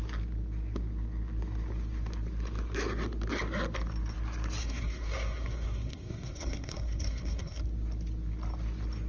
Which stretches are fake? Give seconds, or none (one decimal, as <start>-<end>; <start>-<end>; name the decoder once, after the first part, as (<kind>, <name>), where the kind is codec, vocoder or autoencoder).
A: 4.6-7.6 (codec, SNAC)